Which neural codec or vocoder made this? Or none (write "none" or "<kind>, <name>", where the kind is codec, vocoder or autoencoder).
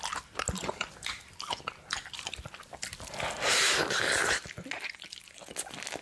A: none